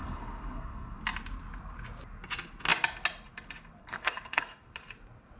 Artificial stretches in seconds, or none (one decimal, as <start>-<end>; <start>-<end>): 0.0-1.0; 3.8-4.7